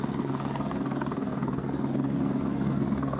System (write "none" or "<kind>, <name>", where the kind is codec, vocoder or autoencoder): codec, SNAC